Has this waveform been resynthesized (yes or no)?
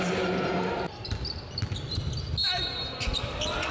no